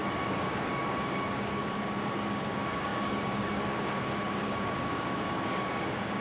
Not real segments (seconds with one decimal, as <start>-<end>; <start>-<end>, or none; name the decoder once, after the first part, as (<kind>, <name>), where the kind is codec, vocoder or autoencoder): 0.0-6.2 (codec, DAC)